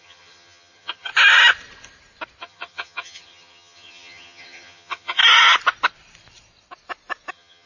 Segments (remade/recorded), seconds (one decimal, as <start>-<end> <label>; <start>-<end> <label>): 0.0-1.1 remade; 1.1-2.4 recorded; 2.4-5.2 remade; 5.2-7.3 recorded; 7.3-7.7 remade